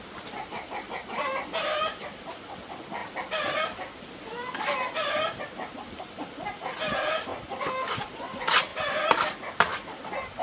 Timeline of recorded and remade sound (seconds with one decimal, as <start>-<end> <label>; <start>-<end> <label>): 0.0-10.4 recorded